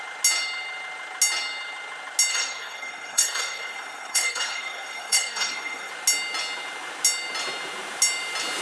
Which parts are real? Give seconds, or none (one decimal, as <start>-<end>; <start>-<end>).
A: 0.0-2.3; 5.9-8.6